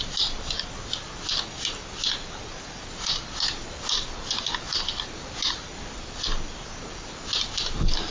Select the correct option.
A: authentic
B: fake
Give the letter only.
A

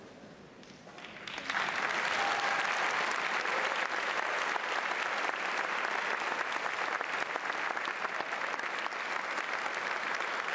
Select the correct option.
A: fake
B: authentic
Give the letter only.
B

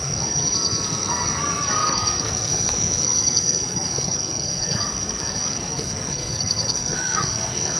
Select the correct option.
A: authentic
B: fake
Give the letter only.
B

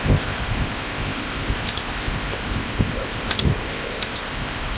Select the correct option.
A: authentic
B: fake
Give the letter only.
B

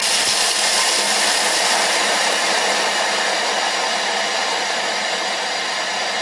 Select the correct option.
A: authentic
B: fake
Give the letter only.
B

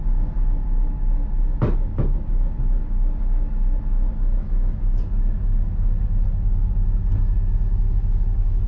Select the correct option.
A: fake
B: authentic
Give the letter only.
B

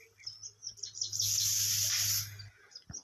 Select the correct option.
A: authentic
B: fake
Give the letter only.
A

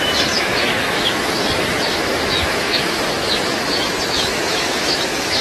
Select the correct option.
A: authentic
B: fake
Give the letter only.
B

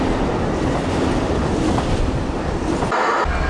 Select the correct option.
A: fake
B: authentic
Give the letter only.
B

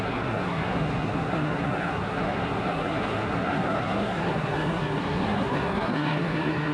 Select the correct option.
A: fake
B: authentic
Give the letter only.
A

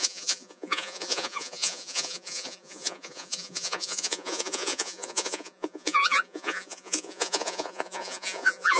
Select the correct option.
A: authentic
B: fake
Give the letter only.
B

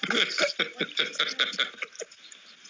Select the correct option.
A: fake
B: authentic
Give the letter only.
B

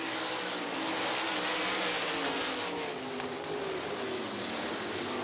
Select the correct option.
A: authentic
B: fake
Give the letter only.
A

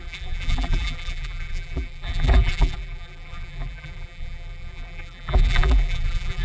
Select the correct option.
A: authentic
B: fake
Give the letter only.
B